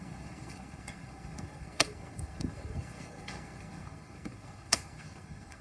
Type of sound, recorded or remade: remade